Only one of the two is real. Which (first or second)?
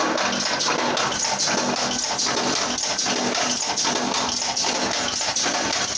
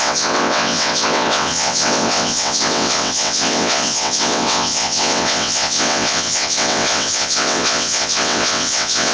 first